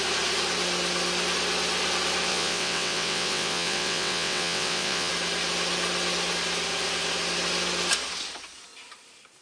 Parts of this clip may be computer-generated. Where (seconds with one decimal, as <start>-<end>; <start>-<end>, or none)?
2.3-5.1